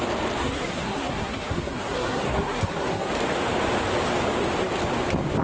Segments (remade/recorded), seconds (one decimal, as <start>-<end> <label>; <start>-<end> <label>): 0.0-0.4 recorded; 0.4-3.1 remade; 3.1-5.4 recorded